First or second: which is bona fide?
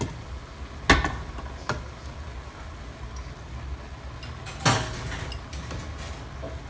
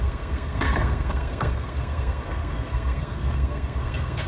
first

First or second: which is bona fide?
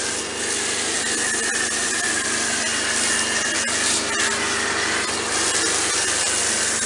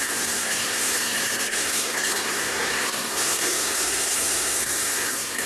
first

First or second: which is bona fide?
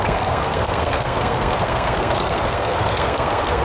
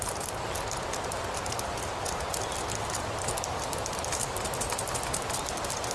second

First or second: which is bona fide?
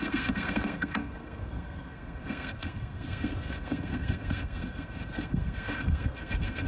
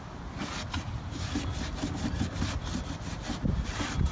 second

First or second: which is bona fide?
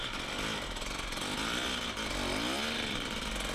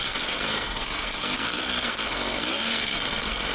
first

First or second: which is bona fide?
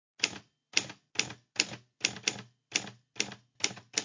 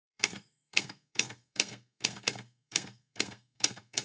first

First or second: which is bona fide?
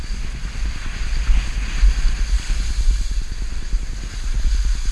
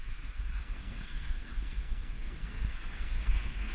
first